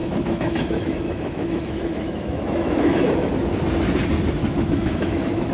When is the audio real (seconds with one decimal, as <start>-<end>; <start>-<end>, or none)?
3.3-4.4